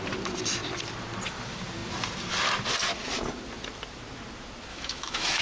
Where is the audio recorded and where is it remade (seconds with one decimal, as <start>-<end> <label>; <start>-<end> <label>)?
0.0-4.7 recorded; 4.7-5.4 remade